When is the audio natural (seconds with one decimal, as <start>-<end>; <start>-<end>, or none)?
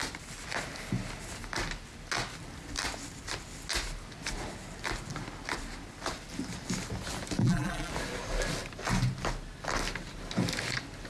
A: 0.0-7.4; 7.9-11.1